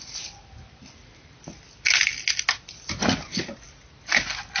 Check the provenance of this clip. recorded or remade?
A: recorded